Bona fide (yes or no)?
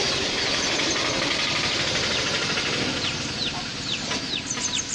yes